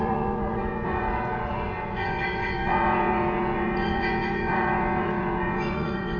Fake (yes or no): yes